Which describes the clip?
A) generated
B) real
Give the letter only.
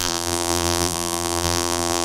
A